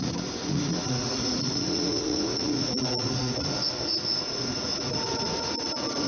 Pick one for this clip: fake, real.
fake